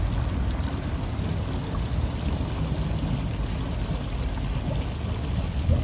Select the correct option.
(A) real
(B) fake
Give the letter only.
A